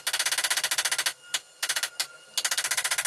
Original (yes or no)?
yes